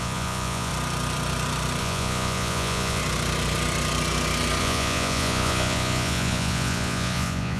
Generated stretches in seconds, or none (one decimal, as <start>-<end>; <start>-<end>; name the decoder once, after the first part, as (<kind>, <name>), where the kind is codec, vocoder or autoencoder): 0.0-0.7 (vocoder, Vocos); 1.8-3.0; 4.6-7.6